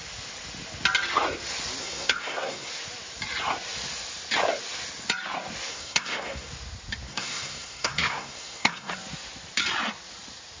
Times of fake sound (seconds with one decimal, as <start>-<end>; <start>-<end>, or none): 1.8-2.7; 5.7-6.5; 7.1-8.9